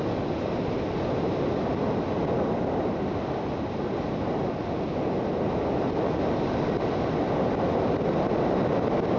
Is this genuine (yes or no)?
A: yes